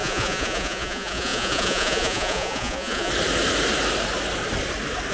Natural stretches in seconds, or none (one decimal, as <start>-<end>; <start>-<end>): 3.1-5.1